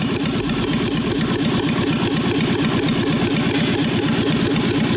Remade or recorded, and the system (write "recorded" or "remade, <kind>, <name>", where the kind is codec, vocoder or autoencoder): recorded